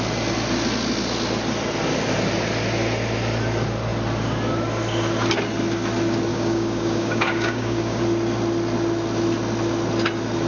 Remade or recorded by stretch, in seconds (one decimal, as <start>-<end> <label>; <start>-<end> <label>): 0.0-6.3 recorded; 6.3-8.0 remade; 8.0-10.5 recorded

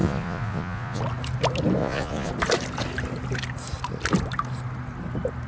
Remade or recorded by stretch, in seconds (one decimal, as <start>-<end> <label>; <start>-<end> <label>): 0.0-1.0 remade; 1.0-1.8 recorded; 1.8-2.3 remade; 2.3-5.5 recorded

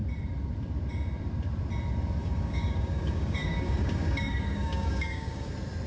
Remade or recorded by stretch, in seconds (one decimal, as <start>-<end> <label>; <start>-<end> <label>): 0.0-2.2 recorded; 2.2-5.5 remade; 5.5-5.9 recorded

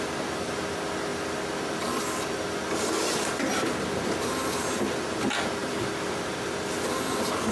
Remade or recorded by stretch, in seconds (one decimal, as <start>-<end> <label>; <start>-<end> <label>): 0.0-7.5 recorded

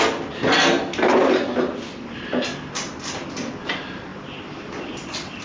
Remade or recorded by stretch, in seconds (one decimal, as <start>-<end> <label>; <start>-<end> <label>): 0.0-4.1 recorded; 4.1-5.4 remade

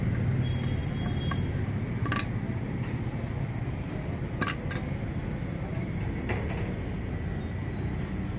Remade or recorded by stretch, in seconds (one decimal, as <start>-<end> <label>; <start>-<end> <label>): 0.0-8.4 recorded

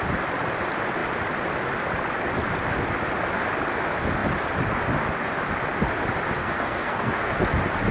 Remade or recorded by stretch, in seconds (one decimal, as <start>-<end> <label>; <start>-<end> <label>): 0.0-6.4 recorded; 6.4-7.4 remade; 7.4-7.9 recorded